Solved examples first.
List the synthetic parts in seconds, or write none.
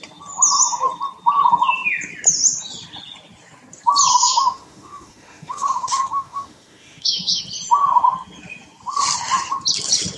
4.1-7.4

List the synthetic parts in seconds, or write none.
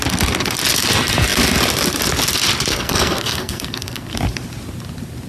2.7-4.1